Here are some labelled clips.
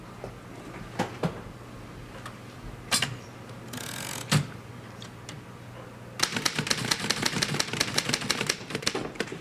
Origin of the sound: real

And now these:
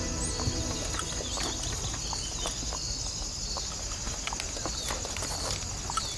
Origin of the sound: real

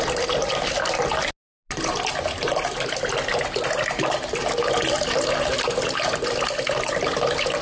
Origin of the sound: real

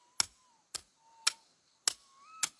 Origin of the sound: real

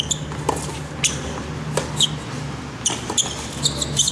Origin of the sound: real